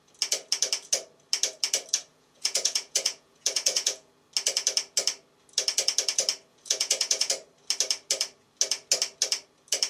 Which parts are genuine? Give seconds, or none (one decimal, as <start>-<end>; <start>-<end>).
0.0-2.1; 4.1-6.5; 7.3-9.9